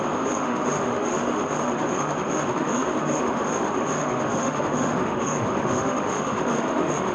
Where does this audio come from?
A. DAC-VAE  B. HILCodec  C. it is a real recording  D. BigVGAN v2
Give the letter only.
A